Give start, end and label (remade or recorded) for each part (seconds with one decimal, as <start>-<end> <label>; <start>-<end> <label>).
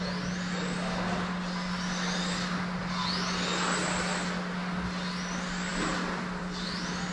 0.0-7.1 recorded